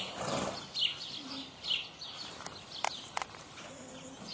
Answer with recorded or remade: recorded